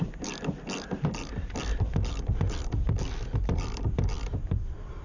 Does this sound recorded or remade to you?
remade